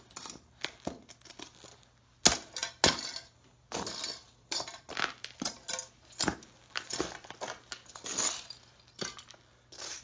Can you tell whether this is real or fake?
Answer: real